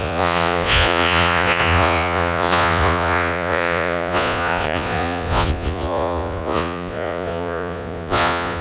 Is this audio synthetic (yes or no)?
yes